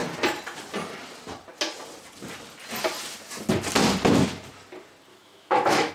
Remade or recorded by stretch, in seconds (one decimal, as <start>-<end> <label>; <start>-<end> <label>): 0.0-5.1 recorded; 5.1-5.9 remade